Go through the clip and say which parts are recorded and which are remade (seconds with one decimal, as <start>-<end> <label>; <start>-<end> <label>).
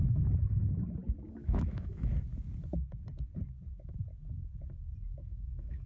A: 0.0-0.6 remade; 0.6-1.3 recorded; 1.3-2.1 remade; 2.1-5.0 recorded; 5.0-5.9 remade